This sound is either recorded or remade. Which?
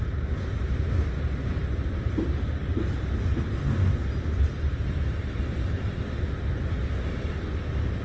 recorded